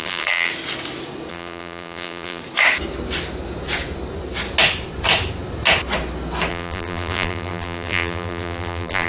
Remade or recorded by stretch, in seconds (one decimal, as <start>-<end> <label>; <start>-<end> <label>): 0.0-0.5 remade; 0.5-1.3 recorded; 1.3-2.4 remade; 2.4-6.5 recorded; 6.5-9.1 remade